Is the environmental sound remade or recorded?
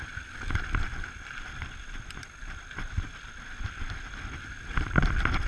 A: remade